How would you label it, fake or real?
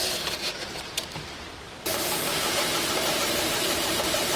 fake